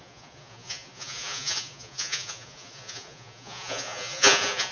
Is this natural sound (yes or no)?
no